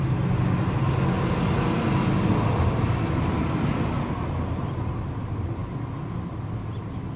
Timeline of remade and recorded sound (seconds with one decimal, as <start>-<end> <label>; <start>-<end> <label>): 0.0-7.2 recorded